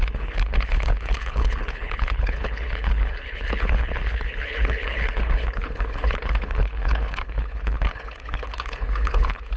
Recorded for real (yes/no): no